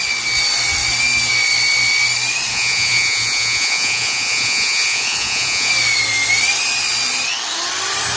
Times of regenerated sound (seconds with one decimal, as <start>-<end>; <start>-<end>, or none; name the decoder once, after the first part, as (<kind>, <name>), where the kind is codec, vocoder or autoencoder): 2.5-5.7 (vocoder, Vocos)